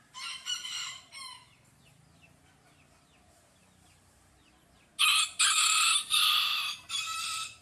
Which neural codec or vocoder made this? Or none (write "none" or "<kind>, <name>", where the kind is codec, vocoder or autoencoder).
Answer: vocoder, BigVGAN v2